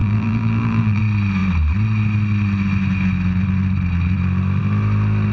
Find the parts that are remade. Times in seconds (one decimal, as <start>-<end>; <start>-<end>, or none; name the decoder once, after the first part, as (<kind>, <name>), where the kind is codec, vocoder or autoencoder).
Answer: 0.0-1.0 (vocoder, BigVGAN v2)